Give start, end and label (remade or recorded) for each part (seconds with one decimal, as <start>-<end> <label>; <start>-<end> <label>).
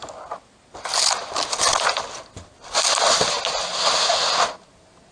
0.0-5.1 recorded